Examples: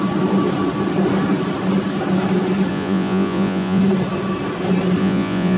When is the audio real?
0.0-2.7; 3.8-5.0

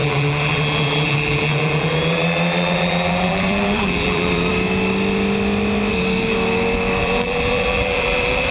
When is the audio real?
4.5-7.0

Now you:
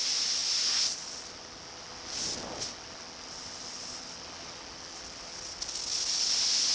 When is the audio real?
0.0-6.7